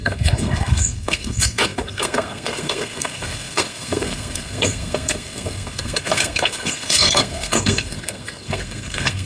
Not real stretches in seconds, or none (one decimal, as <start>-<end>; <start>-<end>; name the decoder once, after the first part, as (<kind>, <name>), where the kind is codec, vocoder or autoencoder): 0.0-9.3 (codec, SNAC)